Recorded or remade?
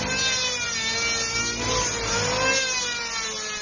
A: recorded